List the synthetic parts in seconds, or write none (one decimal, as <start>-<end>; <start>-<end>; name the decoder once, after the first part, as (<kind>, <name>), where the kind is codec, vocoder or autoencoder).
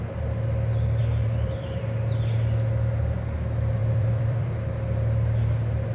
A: 1.0-1.8 (vocoder, BigVGAN v2); 3.8-4.5